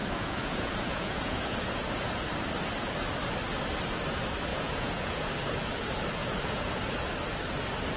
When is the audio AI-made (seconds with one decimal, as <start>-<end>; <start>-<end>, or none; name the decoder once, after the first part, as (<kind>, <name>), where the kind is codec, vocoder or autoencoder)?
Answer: 0.0-2.1 (vocoder, Vocos); 4.5-5.3; 6.2-6.7